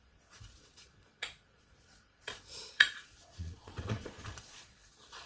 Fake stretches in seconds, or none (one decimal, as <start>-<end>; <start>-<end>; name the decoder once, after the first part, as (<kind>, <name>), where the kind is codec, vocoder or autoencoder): 0.0-5.3 (vocoder, Vocos)